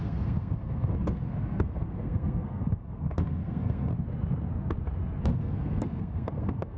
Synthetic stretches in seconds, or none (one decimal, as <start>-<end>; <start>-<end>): 0.0-3.9; 5.2-6.8